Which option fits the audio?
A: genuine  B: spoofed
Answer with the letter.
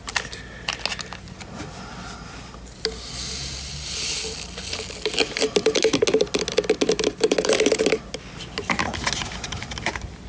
A